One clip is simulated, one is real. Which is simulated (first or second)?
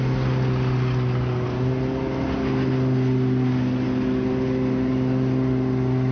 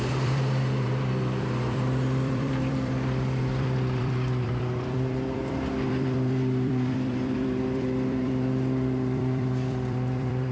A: second